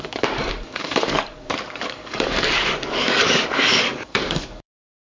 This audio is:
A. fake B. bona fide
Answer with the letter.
A